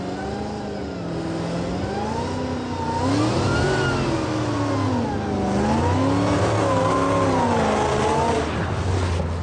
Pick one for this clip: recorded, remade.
recorded